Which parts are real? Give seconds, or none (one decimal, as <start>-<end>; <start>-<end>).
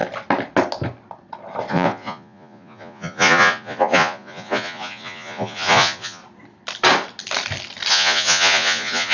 0.0-1.7; 6.2-7.9